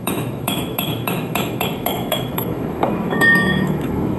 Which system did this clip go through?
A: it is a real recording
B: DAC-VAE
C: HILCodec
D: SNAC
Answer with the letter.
B